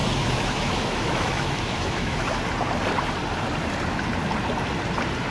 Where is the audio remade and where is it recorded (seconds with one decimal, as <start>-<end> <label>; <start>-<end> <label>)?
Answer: 0.0-2.4 remade; 2.4-5.3 recorded

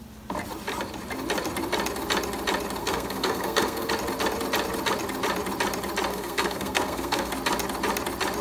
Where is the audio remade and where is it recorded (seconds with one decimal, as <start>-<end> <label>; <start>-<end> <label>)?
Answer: 0.0-2.8 recorded; 2.8-3.9 remade; 3.9-6.1 recorded; 6.1-7.3 remade; 7.3-8.4 recorded

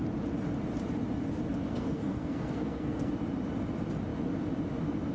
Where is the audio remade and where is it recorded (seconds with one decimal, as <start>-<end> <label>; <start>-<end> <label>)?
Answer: 0.0-1.5 recorded; 1.5-3.1 remade; 3.1-5.1 recorded

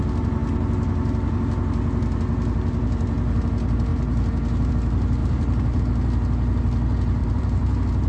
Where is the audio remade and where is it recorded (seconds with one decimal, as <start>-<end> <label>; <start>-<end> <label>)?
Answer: 0.0-5.2 recorded; 5.2-5.8 remade; 5.8-7.2 recorded; 7.2-8.1 remade

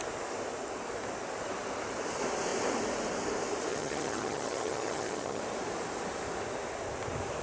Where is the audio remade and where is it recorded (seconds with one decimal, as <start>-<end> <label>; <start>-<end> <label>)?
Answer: 0.0-3.7 recorded; 3.7-5.4 remade; 5.4-7.4 recorded